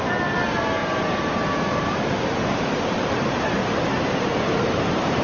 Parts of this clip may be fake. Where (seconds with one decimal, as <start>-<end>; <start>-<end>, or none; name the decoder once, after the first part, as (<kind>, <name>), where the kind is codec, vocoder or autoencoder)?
0.8-3.0 (vocoder, BigVGAN v2); 3.6-5.2